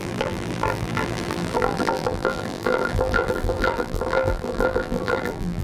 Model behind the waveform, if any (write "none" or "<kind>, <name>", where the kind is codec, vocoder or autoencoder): vocoder, BigVGAN v2